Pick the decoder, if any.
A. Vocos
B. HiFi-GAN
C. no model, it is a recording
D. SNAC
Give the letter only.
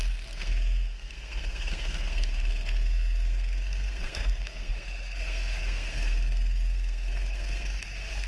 D